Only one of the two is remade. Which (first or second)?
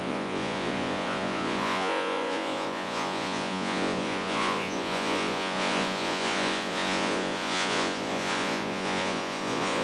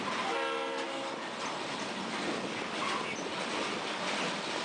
first